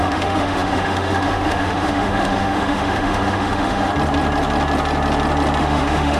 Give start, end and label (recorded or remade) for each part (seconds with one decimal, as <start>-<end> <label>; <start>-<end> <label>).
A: 0.0-3.9 remade; 3.9-5.6 recorded; 5.6-6.2 remade